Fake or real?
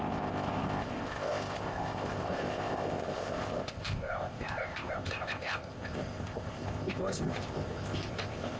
fake